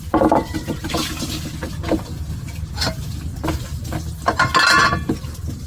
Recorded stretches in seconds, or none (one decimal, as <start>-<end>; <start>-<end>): 0.0-0.5; 1.1-5.7